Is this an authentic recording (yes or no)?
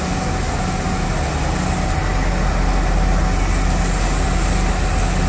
yes